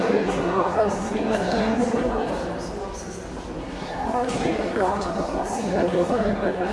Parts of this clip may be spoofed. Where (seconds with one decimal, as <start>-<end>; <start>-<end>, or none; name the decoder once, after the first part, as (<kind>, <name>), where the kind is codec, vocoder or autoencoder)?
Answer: 0.0-2.3 (codec, SNAC); 3.6-6.7